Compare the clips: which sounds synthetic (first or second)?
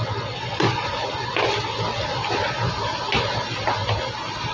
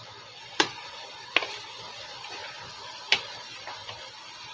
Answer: second